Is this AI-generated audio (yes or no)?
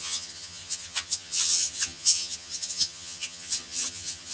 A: yes